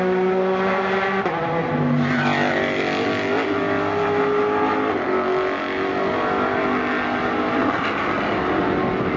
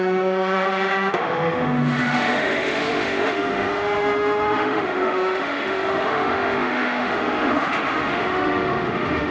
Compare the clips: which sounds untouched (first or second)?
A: first